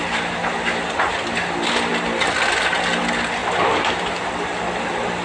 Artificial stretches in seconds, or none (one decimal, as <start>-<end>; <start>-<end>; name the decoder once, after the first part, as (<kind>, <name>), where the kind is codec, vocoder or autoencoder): 3.4-4.3 (vocoder, BigVGAN v2)